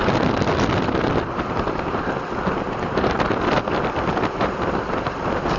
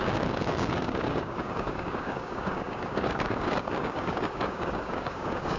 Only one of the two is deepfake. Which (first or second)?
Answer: second